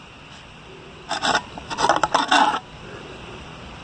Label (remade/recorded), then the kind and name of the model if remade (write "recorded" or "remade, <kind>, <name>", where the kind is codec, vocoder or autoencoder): recorded